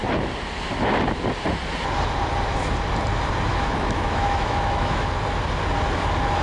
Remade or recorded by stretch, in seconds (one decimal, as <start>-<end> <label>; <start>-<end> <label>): 0.0-3.5 recorded; 3.5-5.1 remade; 5.1-6.4 recorded